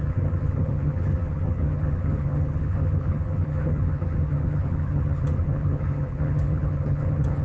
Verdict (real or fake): fake